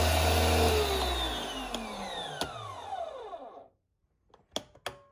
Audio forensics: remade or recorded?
recorded